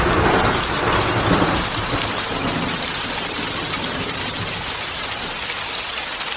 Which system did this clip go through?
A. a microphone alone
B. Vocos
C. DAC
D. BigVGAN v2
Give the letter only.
A